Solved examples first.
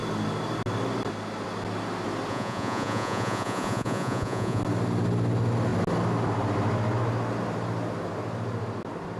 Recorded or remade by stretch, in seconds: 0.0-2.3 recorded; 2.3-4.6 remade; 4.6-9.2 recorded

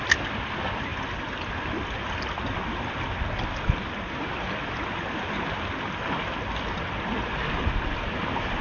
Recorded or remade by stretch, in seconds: 0.0-8.6 recorded

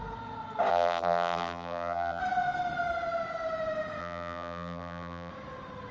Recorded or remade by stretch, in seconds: 0.0-0.7 recorded; 0.7-2.2 remade; 2.2-4.0 recorded; 4.0-5.3 remade; 5.3-5.9 recorded

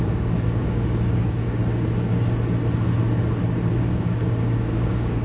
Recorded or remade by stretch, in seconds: 0.0-1.6 remade; 1.6-3.8 recorded; 3.8-5.2 remade

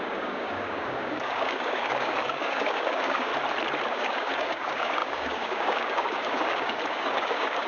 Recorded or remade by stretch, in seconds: 0.0-3.3 remade; 3.3-3.9 recorded; 3.9-7.7 remade